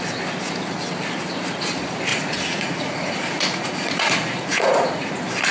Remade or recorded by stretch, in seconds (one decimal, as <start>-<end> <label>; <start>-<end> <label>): 0.0-2.1 recorded; 2.1-5.1 remade; 5.1-5.5 recorded